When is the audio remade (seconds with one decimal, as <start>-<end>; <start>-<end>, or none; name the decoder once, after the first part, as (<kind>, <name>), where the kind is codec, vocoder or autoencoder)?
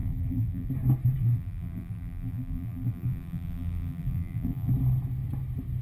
0.0-0.7 (vocoder, BigVGAN v2); 1.2-4.7